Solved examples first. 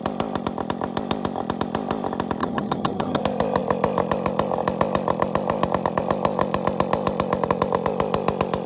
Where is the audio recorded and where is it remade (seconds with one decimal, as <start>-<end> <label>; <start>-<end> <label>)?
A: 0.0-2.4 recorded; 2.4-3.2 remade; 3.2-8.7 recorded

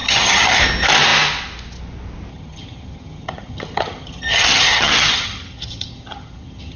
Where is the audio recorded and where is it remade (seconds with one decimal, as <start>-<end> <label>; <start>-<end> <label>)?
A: 0.0-0.6 remade; 0.6-2.3 recorded; 2.3-6.8 remade

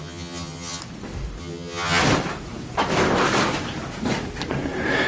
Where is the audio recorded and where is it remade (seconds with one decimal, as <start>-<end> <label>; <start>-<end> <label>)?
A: 0.0-0.8 remade; 0.8-1.4 recorded; 1.4-2.0 remade; 2.0-5.1 recorded